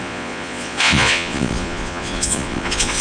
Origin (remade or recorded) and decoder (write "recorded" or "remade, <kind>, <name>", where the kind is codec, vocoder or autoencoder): remade, vocoder, Vocos